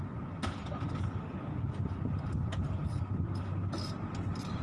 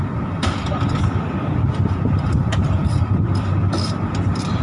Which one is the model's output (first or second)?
second